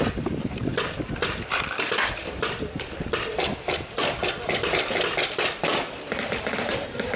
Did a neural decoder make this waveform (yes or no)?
yes